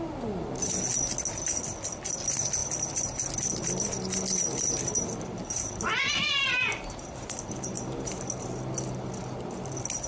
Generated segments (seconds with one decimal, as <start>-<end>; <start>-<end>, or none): 5.4-6.9